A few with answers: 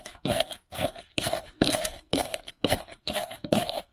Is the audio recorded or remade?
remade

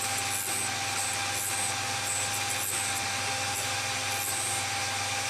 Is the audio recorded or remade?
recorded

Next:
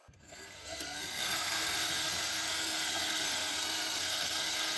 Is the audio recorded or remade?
remade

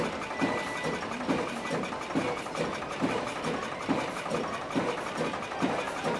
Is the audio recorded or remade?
recorded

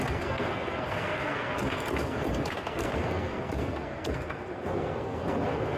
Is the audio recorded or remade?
remade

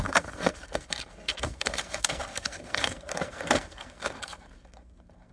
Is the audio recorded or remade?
remade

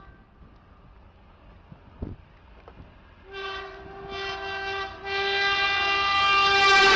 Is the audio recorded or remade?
recorded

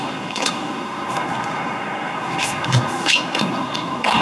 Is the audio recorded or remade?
remade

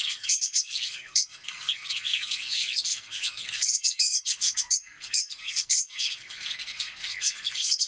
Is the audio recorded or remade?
remade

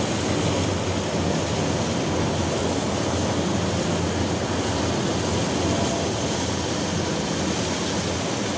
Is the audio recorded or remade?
recorded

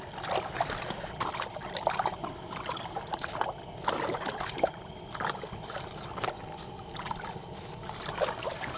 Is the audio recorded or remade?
recorded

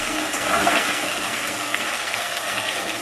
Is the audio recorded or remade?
remade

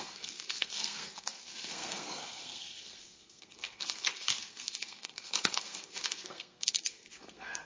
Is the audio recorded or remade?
remade